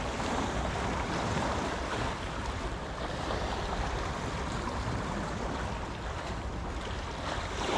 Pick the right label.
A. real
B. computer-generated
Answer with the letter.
B